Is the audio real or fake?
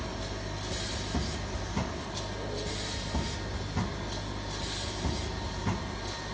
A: real